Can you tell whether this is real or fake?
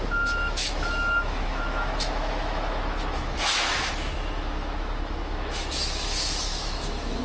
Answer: fake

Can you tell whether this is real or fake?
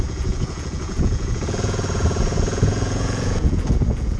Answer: fake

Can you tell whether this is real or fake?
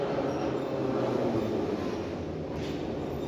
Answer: real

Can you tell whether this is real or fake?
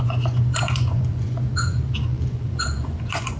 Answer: fake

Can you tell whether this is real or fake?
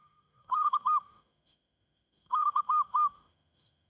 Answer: fake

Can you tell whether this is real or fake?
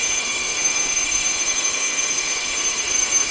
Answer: fake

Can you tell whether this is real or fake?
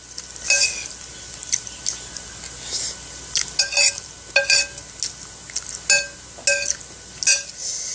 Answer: real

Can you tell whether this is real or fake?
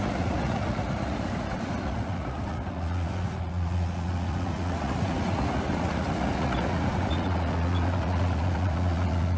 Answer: fake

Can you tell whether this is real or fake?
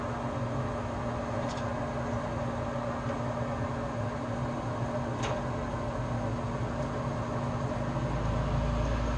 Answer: real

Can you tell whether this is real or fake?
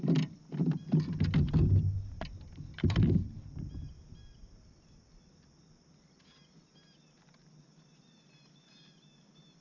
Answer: real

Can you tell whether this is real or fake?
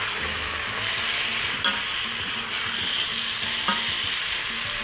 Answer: real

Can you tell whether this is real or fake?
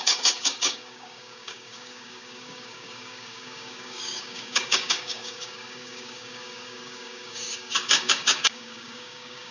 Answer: fake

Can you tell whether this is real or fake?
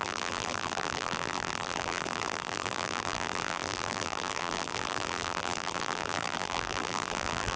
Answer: fake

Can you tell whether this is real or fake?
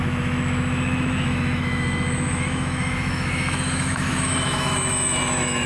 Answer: fake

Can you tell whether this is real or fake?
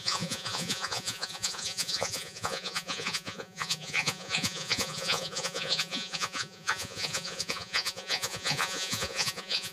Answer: fake